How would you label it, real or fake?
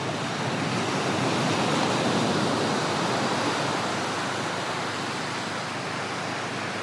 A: real